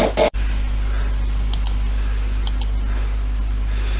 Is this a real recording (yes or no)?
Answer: yes